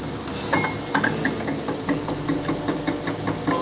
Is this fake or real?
real